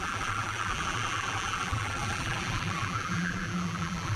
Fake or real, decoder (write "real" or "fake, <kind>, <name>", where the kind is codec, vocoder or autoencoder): fake, vocoder, BigVGAN v2